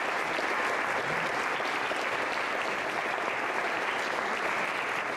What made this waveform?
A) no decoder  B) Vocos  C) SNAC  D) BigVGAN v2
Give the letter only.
A